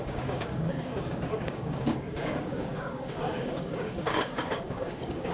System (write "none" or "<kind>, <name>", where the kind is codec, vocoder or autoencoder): codec, DAC